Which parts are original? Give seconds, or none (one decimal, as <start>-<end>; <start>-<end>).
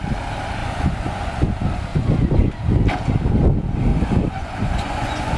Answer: 0.0-0.6; 1.5-1.9; 2.7-3.9